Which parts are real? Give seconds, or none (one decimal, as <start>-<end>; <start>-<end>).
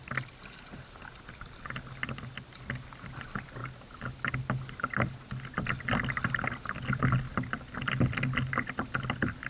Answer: 0.0-9.5